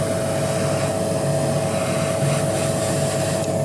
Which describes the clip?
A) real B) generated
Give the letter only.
A